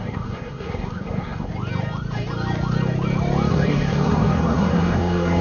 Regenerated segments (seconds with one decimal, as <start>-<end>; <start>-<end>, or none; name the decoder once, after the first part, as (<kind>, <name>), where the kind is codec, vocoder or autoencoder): 0.0-1.5 (codec, SNAC); 3.5-5.4